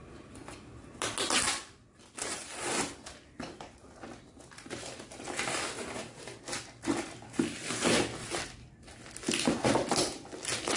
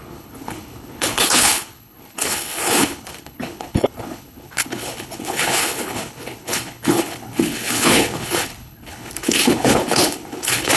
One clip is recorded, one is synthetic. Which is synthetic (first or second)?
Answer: second